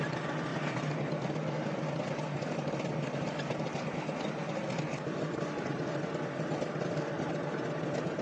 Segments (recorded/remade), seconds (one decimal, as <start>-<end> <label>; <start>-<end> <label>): 0.0-8.2 recorded